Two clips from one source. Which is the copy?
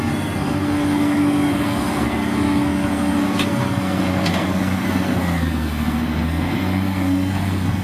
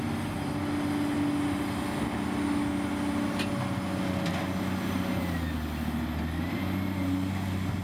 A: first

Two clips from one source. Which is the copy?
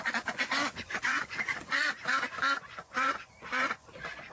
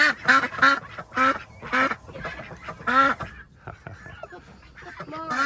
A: first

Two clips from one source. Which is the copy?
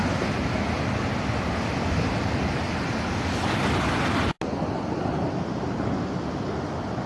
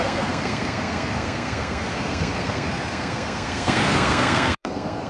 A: second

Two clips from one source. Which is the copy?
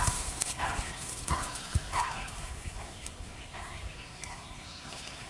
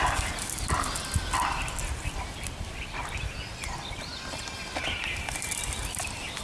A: first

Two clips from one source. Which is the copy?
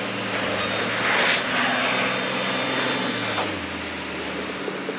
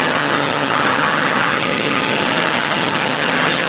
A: second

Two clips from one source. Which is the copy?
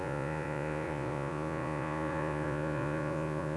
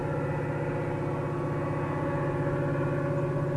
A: first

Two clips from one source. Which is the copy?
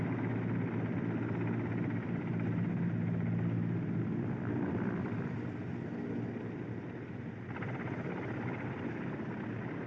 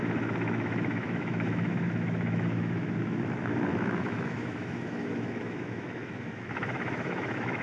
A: second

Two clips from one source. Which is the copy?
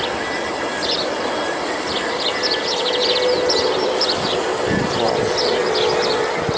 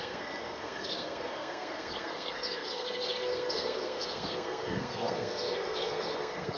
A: second